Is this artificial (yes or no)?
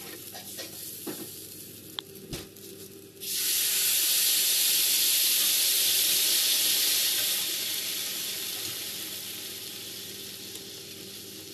no